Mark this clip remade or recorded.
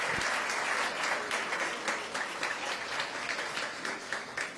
recorded